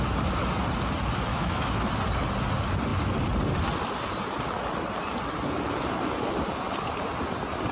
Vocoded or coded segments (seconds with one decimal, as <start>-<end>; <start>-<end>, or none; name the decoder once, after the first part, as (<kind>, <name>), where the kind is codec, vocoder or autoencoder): 1.3-1.9 (autoencoder, DAC-VAE)